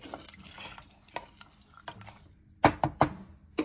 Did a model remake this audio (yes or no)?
no